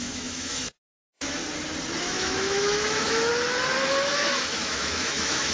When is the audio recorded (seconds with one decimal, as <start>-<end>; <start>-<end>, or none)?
1.4-2.0; 3.3-4.1